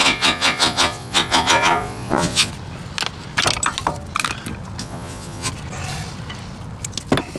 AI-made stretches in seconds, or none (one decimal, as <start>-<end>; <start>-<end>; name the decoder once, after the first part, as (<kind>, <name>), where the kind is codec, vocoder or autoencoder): 0.0-2.5 (vocoder, Vocos); 4.8-5.5